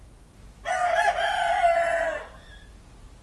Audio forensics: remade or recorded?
recorded